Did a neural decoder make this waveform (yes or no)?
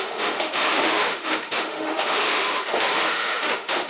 yes